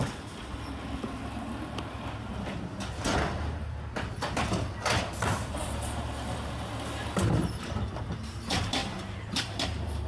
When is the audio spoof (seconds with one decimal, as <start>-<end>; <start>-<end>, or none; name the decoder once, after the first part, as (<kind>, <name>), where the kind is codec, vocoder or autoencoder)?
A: 5.6-6.7 (vocoder, BigVGAN v2); 8.8-10.1